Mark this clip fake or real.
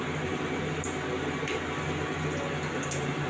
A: real